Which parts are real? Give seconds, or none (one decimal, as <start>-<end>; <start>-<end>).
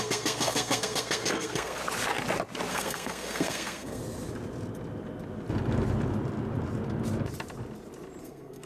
1.8-2.7; 4.0-8.2